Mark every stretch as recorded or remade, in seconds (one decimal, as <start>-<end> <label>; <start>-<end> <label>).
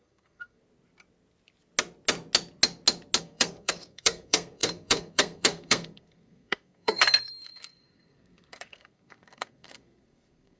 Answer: 0.0-0.6 remade; 0.6-3.2 recorded; 3.2-10.6 remade